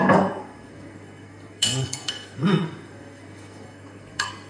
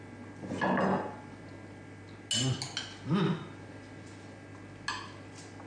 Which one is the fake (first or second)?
first